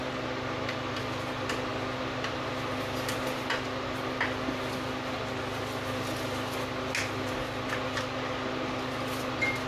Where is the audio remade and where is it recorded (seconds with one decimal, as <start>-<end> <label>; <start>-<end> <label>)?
0.0-9.7 recorded